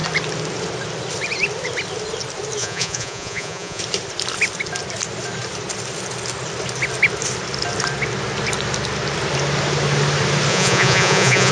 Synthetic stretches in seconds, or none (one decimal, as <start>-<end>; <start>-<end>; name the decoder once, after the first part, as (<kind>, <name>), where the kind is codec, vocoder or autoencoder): 2.6-3.8 (vocoder, Vocos); 10.5-11.5